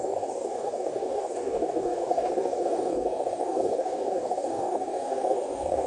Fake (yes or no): yes